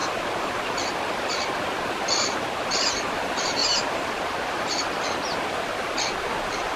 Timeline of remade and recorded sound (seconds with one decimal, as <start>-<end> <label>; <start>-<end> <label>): 0.0-3.6 recorded; 3.6-4.2 remade; 4.2-6.8 recorded

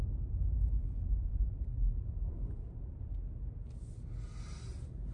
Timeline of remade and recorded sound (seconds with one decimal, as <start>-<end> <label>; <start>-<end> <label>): 0.0-1.3 recorded; 1.3-3.0 remade; 3.0-5.1 recorded

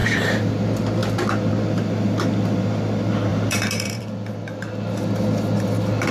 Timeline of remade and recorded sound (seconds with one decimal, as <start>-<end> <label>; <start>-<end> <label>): 0.0-0.5 remade; 0.5-3.3 recorded; 3.3-4.0 remade; 4.0-6.1 recorded

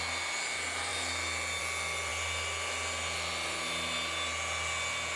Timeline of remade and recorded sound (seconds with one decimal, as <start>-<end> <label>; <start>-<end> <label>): 0.0-5.2 recorded

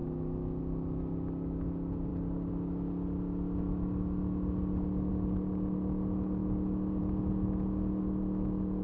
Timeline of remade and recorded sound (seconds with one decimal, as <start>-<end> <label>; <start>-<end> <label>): 0.0-8.8 recorded